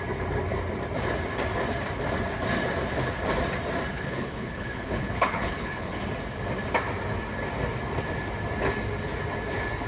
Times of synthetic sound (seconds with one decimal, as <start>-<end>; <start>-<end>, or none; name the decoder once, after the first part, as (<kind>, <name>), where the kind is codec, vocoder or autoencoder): 3.9-6.0 (codec, HILCodec)